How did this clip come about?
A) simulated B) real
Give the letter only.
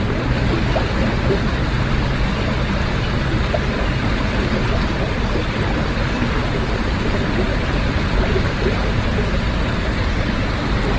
B